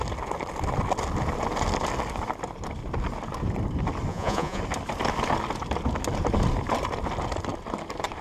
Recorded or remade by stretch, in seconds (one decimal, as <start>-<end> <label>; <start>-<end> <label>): 0.0-4.1 recorded; 4.1-4.6 remade; 4.6-8.2 recorded